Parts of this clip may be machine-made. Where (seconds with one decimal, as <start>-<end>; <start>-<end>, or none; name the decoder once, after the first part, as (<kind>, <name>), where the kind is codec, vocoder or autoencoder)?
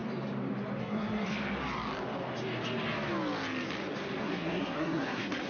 0.8-1.3 (codec, SNAC); 4.2-5.5